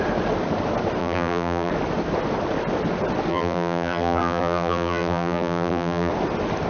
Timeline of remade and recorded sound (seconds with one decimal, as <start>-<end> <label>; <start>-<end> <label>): 0.0-1.0 recorded; 1.0-1.7 remade; 1.7-3.3 recorded; 3.3-6.1 remade; 6.1-6.7 recorded